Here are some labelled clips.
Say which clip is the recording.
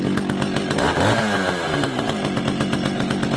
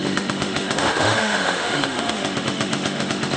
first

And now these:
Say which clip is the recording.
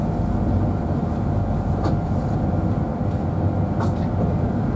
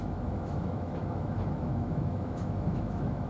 first